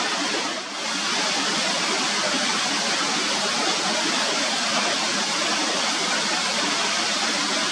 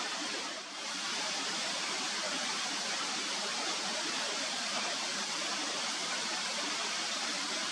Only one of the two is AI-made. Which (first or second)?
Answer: second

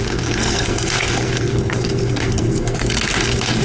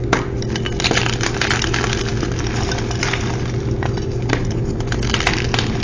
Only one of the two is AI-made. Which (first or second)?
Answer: first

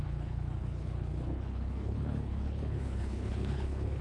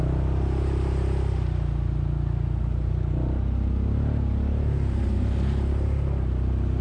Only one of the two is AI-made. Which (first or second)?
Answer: first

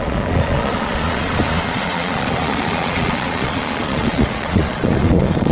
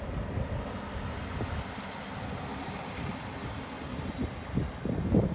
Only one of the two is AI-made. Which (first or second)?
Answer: first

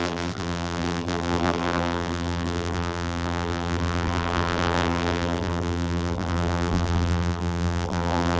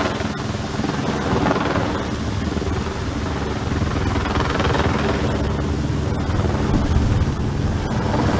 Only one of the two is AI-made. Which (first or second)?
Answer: first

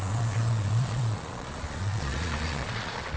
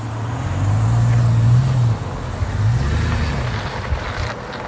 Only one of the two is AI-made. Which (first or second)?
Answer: first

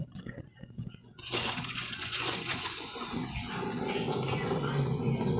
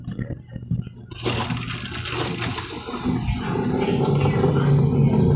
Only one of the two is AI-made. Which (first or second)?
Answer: first